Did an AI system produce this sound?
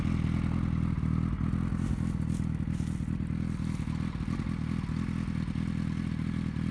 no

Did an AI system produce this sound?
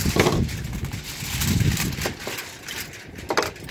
no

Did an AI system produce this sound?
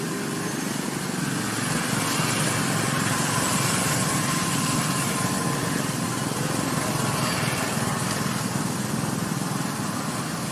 no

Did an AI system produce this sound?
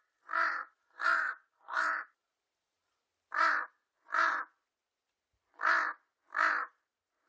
yes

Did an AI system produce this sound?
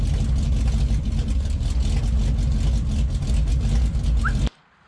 yes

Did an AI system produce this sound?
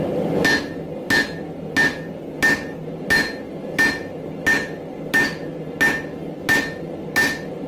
no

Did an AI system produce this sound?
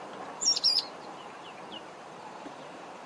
yes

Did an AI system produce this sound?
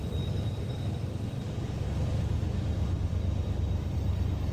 yes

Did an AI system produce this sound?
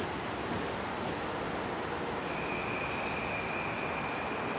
no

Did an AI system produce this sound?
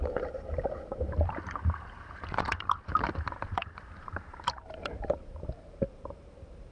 yes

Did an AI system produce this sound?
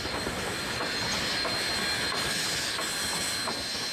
no